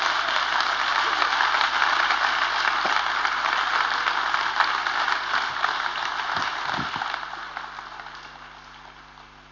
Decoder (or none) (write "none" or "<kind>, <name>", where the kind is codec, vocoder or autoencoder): none